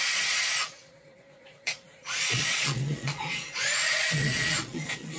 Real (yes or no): no